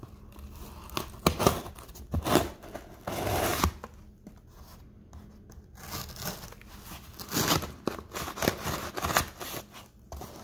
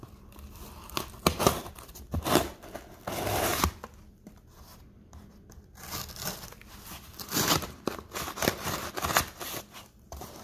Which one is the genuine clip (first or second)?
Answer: first